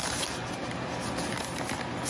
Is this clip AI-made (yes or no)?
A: no